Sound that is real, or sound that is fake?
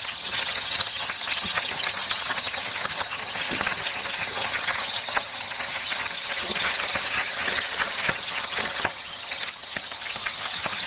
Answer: fake